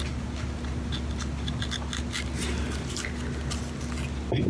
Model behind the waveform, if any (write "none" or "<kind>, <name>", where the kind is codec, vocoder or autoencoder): none